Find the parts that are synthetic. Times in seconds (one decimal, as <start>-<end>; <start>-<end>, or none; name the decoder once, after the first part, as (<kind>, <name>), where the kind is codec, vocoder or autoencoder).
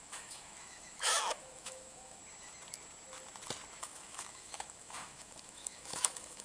0.0-2.2 (autoencoder, DAC-VAE); 3.8-6.4